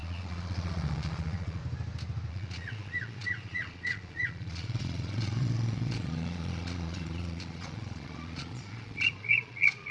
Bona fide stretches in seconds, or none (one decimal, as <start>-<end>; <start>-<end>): 1.6-2.3